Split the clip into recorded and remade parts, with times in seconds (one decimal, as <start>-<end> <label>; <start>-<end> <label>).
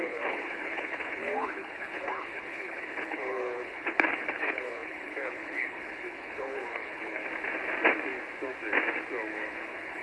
0.0-7.2 remade; 7.2-9.3 recorded; 9.3-10.0 remade